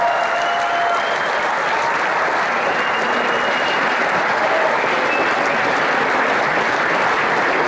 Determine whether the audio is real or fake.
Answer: real